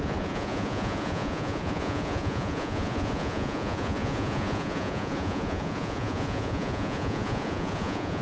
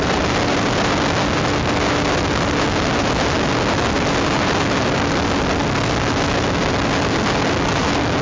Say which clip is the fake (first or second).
first